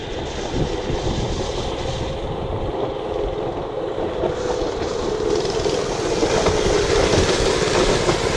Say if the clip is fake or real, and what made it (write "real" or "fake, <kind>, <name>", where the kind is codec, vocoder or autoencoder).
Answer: real